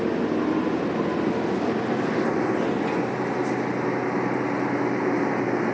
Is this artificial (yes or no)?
no